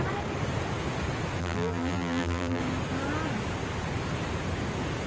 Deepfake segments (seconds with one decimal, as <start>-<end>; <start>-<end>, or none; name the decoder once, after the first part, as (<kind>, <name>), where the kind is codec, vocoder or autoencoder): 1.4-2.6 (vocoder, BigVGAN v2)